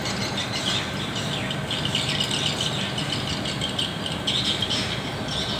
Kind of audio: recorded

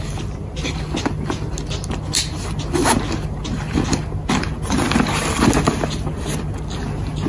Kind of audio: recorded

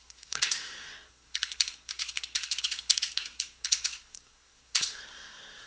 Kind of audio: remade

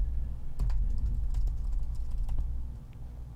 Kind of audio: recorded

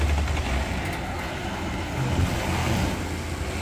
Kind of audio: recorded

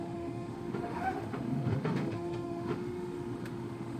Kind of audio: remade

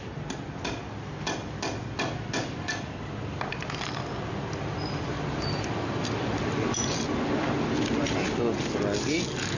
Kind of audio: recorded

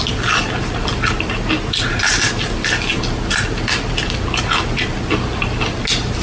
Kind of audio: recorded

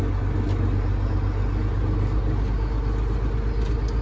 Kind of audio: recorded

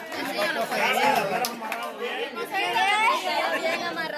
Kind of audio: recorded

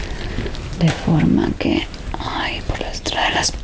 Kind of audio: recorded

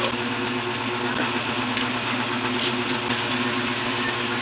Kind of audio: recorded